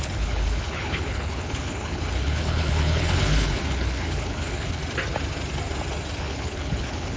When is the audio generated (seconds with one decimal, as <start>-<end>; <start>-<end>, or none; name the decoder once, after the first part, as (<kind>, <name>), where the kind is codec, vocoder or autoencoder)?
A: 0.0-4.8 (codec, HILCodec); 6.2-7.2

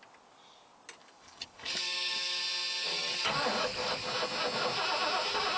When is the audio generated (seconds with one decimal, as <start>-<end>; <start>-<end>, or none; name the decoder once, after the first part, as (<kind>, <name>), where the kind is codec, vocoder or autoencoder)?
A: 1.0-2.4 (codec, DAC); 2.8-4.0

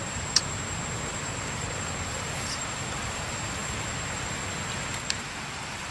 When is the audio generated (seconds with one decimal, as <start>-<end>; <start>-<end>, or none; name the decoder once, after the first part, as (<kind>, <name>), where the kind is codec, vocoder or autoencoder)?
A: 0.0-3.6 (vocoder, BigVGAN v2); 5.1-5.9

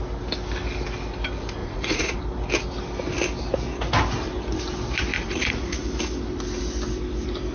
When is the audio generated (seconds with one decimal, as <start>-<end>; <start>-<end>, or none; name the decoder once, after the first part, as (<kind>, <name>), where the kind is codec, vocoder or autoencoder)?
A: 1.6-2.2 (vocoder, Vocos); 5.1-5.9

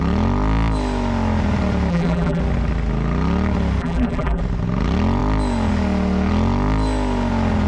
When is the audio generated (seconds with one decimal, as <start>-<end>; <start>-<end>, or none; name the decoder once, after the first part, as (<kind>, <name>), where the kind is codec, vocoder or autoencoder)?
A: 1.9-2.4 (vocoder, BigVGAN v2); 3.8-4.4

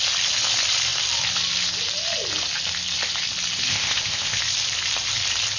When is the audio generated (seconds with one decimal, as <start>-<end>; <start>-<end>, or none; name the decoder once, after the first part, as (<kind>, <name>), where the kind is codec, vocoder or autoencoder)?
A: 3.7-4.4 (codec, ZipCodec)

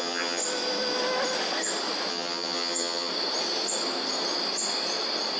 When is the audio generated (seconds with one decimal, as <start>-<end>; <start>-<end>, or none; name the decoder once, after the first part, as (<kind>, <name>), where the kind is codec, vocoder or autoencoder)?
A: 0.0-0.4 (vocoder, HiFi-GAN); 2.1-3.1

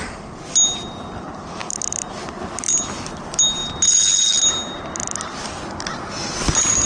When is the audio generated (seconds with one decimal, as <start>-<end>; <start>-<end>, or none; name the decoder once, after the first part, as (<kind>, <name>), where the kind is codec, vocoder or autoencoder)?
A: none